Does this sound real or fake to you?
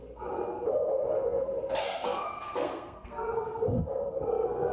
fake